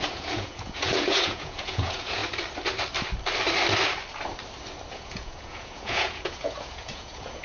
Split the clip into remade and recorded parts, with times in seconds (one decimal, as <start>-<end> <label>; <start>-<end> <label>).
0.0-2.2 remade; 2.2-4.9 recorded; 4.9-7.4 remade